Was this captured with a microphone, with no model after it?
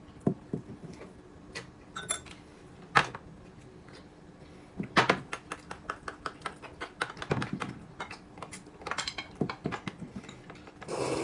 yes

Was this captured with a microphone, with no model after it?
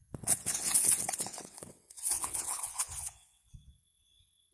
no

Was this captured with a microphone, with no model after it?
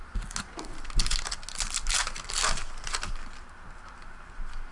yes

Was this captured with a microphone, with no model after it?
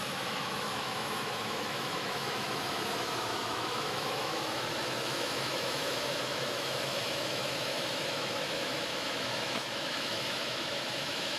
no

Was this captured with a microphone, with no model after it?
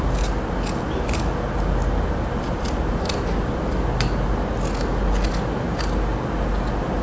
yes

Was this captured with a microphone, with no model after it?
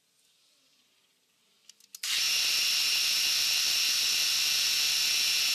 yes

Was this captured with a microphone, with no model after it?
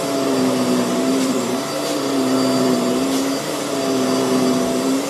yes